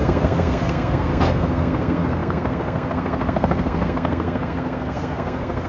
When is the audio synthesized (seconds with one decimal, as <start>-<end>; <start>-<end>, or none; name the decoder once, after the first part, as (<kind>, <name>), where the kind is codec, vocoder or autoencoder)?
0.0-5.7 (codec, SNAC)